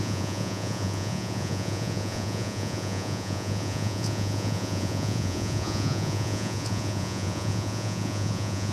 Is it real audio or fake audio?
fake